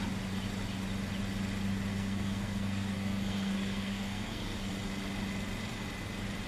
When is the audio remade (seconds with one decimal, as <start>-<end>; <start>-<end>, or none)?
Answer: 1.9-4.7

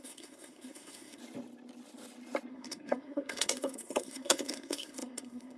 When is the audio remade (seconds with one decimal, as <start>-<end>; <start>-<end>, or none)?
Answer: 0.0-1.2; 2.5-5.6